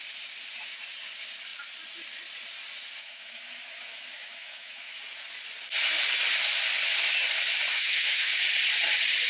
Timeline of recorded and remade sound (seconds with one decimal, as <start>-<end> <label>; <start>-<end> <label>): 0.0-3.0 recorded; 3.0-4.9 remade; 4.9-7.7 recorded; 7.7-8.3 remade; 8.3-9.3 recorded